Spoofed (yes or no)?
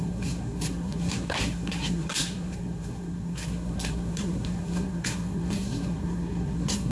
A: yes